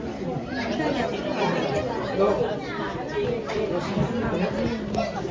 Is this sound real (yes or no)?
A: yes